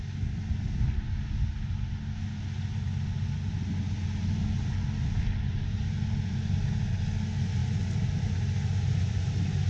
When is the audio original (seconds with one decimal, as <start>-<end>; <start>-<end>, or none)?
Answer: 0.0-9.7